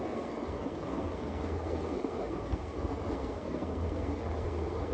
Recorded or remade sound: remade